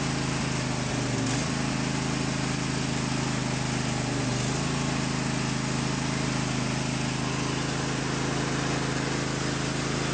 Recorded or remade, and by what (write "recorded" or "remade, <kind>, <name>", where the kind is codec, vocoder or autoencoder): recorded